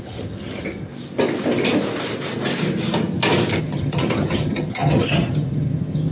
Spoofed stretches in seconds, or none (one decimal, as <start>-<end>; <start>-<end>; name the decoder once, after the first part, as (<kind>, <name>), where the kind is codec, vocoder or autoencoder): 0.0-0.9 (vocoder, HiFi-GAN); 3.6-6.1